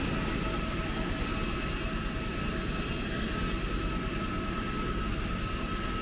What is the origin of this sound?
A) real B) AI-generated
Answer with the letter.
A